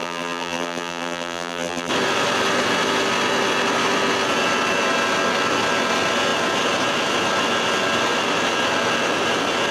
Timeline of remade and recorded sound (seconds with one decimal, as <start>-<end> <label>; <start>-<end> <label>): 0.0-1.9 remade; 1.9-9.7 recorded